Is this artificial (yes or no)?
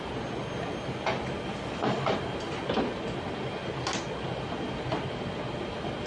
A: no